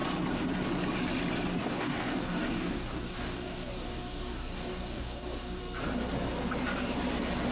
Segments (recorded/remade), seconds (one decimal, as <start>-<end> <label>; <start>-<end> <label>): 0.0-1.6 recorded; 1.6-5.6 remade; 5.6-7.5 recorded